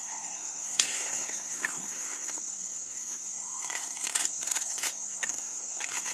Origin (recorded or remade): remade